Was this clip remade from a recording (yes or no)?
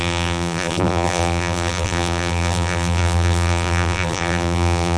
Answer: yes